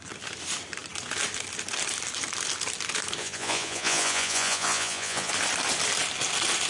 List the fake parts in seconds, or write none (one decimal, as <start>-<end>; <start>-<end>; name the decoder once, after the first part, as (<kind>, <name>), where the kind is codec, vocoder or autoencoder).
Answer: 3.2-5.3 (vocoder, Vocos)